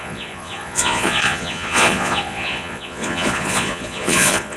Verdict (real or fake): fake